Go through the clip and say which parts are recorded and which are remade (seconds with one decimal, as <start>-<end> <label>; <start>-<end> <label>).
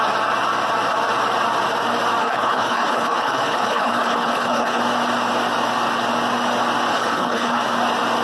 0.0-2.2 recorded; 2.2-4.8 remade; 4.8-6.9 recorded; 6.9-7.6 remade; 7.6-8.2 recorded